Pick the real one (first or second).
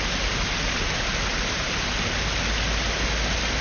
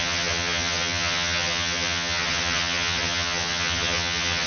first